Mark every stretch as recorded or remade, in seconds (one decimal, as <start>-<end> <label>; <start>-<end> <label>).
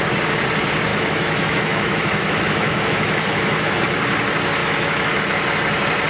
0.0-0.9 recorded; 0.9-3.8 remade; 3.8-4.6 recorded; 4.6-5.2 remade; 5.2-6.1 recorded